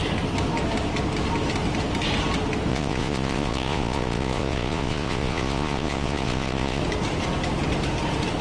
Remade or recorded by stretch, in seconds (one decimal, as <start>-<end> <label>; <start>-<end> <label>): 0.0-2.7 recorded; 2.7-6.8 remade; 6.8-8.4 recorded